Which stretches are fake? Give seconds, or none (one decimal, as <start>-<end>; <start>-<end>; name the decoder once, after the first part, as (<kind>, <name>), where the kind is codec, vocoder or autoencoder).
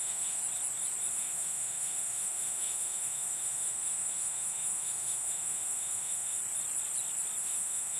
0.0-0.4 (autoencoder, DAC-VAE); 1.1-6.4; 7.4-8.0